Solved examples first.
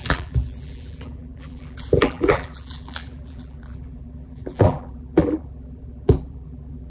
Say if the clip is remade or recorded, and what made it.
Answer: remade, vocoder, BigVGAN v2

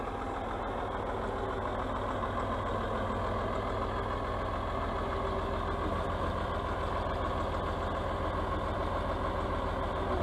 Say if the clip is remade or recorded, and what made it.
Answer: recorded